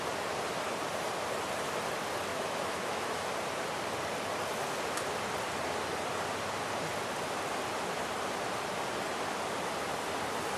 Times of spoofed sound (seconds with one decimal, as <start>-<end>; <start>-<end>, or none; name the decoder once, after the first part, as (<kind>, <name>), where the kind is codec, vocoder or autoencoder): 2.3-3.3 (autoencoder, DAC-VAE)